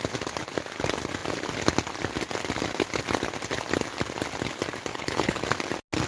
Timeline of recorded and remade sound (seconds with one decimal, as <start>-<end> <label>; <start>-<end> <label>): 0.0-4.9 recorded; 4.9-5.4 remade; 5.4-6.1 recorded